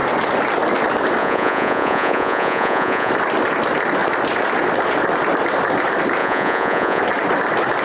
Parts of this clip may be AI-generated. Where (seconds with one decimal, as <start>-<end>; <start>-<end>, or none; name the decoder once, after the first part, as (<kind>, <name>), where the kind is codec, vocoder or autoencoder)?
1.2-3.1 (vocoder, Vocos); 6.2-7.0